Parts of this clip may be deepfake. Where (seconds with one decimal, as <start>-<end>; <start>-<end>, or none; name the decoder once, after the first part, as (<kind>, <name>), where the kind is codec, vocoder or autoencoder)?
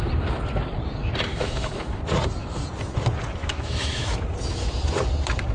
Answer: 1.3-2.0 (autoencoder, DAC-VAE); 3.4-4.2